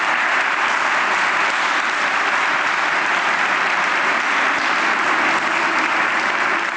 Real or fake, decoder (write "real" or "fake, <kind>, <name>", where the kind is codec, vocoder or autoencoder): real